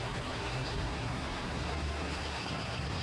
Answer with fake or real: fake